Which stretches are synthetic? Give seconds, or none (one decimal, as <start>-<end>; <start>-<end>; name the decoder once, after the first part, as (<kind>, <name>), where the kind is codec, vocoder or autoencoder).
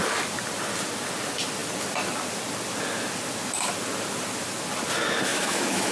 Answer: 5.3-5.9 (autoencoder, DAC-VAE)